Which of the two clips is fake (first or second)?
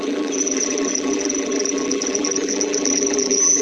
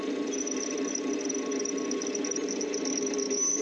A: first